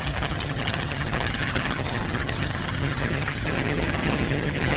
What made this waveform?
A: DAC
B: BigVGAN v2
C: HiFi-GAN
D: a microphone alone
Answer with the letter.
C